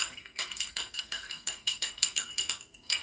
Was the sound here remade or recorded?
remade